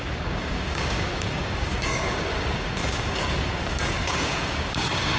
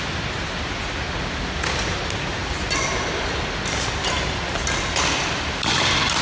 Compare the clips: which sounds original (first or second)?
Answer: second